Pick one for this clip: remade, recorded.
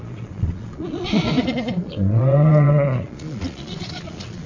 remade